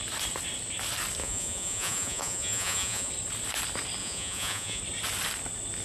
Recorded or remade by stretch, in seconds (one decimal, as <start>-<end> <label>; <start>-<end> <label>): 0.0-1.2 recorded; 1.2-3.1 remade; 3.1-4.0 recorded; 4.0-4.8 remade; 4.8-5.8 recorded